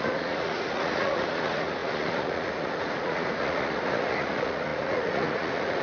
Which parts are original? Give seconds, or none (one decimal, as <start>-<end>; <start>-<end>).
none